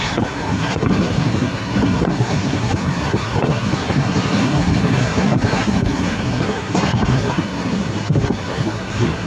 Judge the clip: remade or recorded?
remade